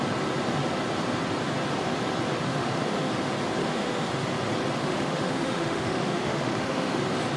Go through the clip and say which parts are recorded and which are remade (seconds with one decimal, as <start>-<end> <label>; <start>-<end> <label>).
0.0-2.5 recorded; 2.5-3.1 remade; 3.1-3.6 recorded; 3.6-4.1 remade; 4.1-4.8 recorded; 4.8-7.0 remade; 7.0-7.4 recorded

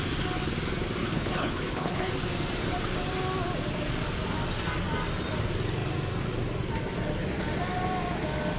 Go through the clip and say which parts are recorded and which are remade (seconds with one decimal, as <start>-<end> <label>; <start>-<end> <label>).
0.0-1.0 recorded; 1.0-2.1 remade; 2.1-8.6 recorded